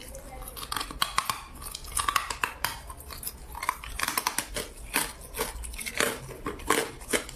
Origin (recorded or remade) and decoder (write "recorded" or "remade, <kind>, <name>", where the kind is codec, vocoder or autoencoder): recorded